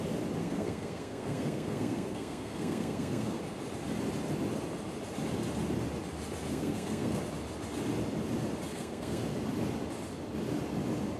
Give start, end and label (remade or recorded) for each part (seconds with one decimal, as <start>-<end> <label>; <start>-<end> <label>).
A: 0.0-0.4 recorded; 0.4-3.4 remade; 3.4-6.5 recorded; 6.5-7.2 remade; 7.2-8.7 recorded; 8.7-9.2 remade; 9.2-11.2 recorded